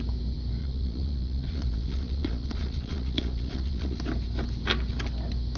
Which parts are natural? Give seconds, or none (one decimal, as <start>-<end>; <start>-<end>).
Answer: 0.0-0.6; 4.0-5.6